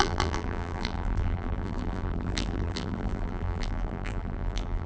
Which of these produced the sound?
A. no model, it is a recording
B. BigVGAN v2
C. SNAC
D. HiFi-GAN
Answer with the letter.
B